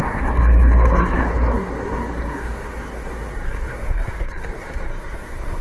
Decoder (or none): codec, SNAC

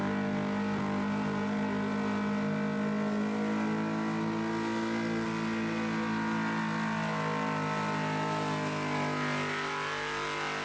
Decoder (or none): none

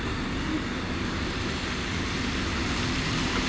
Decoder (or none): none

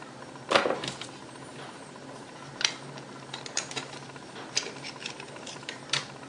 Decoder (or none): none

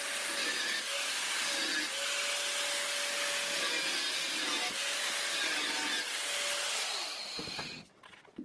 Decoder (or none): none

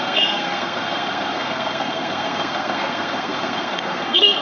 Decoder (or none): codec, SNAC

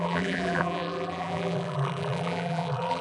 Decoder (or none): vocoder, BigVGAN v2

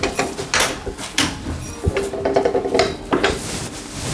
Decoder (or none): none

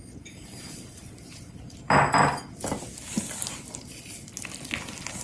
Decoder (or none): none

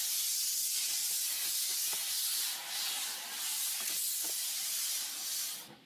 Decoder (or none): none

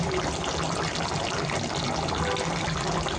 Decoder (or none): none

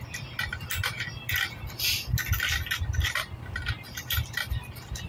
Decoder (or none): none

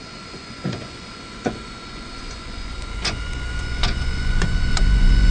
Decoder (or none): vocoder, Vocos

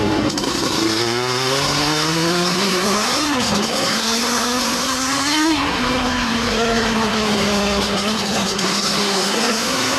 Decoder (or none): codec, SNAC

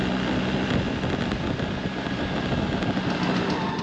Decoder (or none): none